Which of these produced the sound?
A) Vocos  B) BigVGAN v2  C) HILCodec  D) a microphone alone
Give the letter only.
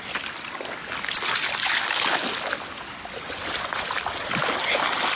D